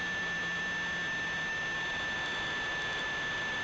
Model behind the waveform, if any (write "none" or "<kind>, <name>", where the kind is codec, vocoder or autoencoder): none